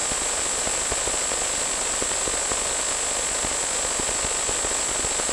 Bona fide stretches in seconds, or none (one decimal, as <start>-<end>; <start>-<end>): 0.0-5.3

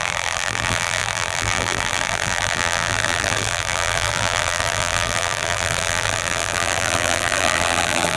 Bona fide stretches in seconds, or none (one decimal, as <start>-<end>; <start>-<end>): none

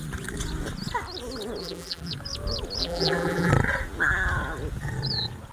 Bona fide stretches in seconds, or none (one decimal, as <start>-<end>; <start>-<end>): 0.0-1.6; 2.1-2.8; 3.5-5.5

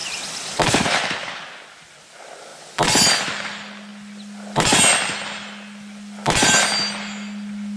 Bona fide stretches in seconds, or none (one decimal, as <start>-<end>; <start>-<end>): 0.6-2.5; 3.1-7.8